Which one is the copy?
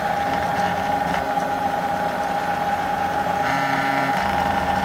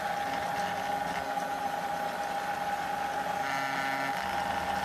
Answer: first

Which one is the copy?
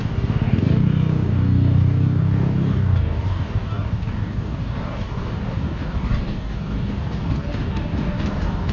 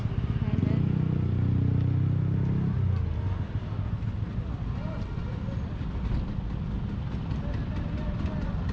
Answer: first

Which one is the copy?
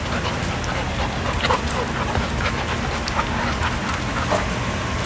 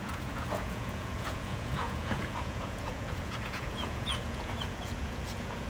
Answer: second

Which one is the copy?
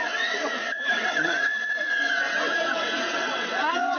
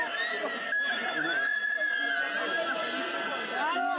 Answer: first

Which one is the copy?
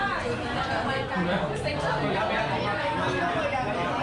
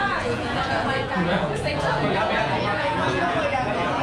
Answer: second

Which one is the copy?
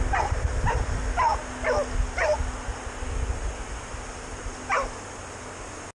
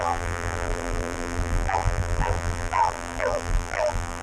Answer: second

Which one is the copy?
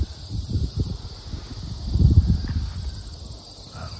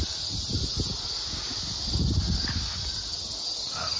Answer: first